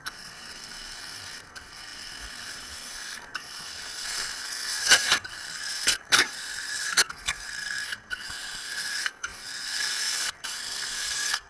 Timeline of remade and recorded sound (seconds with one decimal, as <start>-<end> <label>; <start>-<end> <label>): 0.0-11.5 remade